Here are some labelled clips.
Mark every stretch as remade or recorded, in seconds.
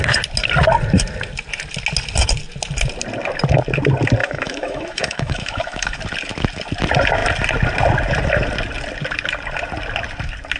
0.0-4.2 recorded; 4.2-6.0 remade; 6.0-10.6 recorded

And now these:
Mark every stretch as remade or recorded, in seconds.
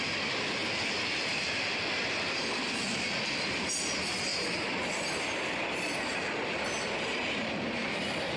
0.0-0.6 remade; 0.6-1.4 recorded; 1.4-8.4 remade